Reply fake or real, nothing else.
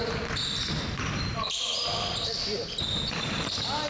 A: fake